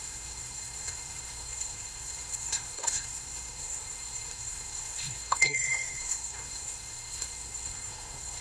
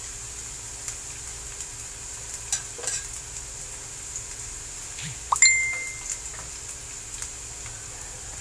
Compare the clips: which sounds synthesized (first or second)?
first